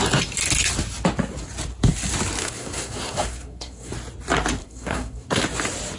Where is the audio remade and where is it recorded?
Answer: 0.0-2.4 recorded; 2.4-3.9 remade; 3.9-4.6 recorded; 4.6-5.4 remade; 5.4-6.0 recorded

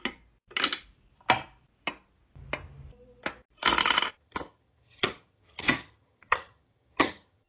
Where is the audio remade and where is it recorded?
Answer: 0.0-4.1 recorded; 4.1-7.5 remade

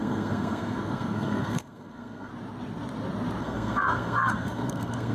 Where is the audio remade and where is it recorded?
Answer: 0.0-2.3 remade; 2.3-3.4 recorded; 3.4-5.1 remade

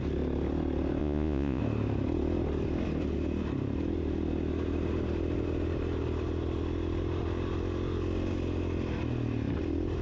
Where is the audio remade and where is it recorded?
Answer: 0.0-1.0 recorded; 1.0-1.6 remade; 1.6-10.0 recorded

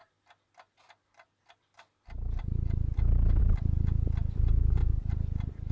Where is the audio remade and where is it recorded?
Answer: 0.0-5.7 recorded